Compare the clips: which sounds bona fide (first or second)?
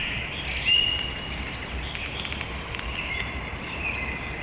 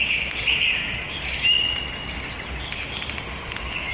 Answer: second